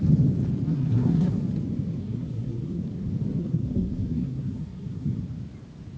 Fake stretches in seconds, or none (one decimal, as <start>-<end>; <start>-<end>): 0.7-1.4; 2.0-2.8; 3.4-5.2